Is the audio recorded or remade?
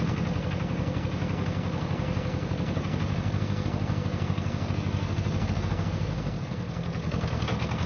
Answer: remade